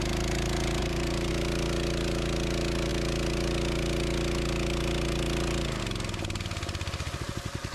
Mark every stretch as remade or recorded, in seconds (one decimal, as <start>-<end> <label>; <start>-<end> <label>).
0.0-0.8 recorded; 0.8-1.3 remade; 1.3-7.7 recorded